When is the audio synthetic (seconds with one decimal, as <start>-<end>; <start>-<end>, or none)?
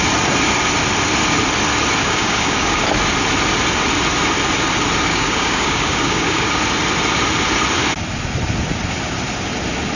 2.0-2.8; 5.1-6.5